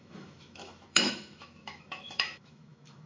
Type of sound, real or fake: fake